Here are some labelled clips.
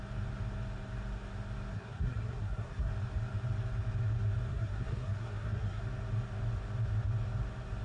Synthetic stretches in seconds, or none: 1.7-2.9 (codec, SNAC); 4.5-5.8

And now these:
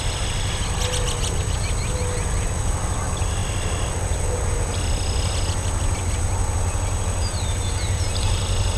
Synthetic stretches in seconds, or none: none

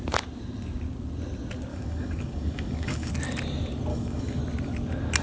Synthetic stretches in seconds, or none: 1.7-3.1 (codec, DAC); 3.9-4.4

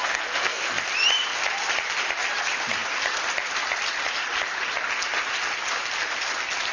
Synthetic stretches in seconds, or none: 0.0-0.7 (codec, SNAC)

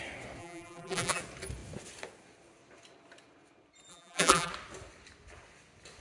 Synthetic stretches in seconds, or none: 0.4-1.2 (vocoder, BigVGAN v2); 3.9-4.5

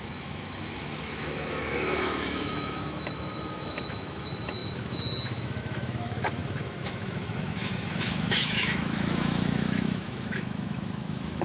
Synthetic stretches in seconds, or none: 0.0-11.4 (autoencoder, DAC-VAE)